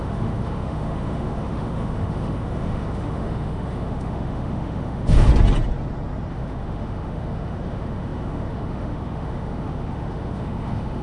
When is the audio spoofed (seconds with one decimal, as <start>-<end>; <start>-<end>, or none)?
0.0-5.3; 6.3-11.0